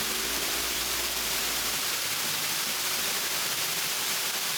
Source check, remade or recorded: remade